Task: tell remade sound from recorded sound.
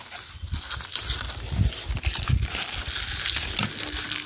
recorded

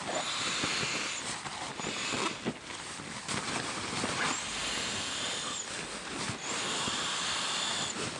recorded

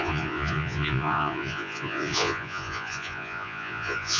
remade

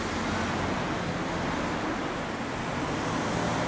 recorded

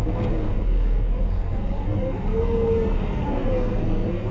remade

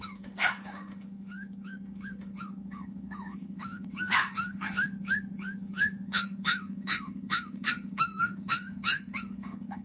remade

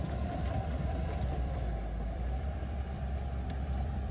remade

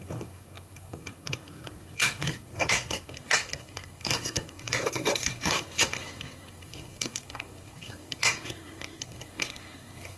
remade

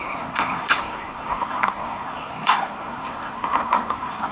remade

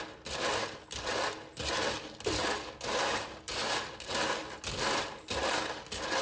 recorded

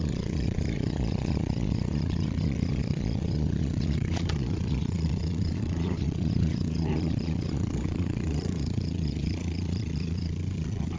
remade